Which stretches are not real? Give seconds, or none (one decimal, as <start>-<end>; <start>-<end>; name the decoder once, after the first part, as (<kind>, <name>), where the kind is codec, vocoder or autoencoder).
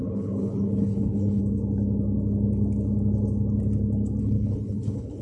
0.0-1.4 (codec, HILCodec); 4.2-5.2